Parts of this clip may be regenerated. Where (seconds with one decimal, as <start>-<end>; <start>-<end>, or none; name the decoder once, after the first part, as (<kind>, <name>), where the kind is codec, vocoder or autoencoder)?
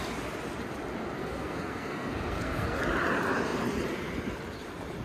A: 1.2-2.8 (codec, SNAC)